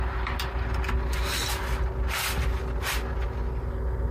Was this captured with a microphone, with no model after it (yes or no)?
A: yes